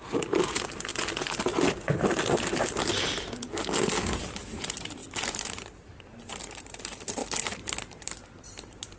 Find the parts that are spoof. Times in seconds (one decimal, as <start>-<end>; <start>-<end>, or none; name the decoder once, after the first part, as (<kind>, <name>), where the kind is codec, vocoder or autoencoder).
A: 0.0-0.9 (vocoder, BigVGAN v2); 4.2-9.0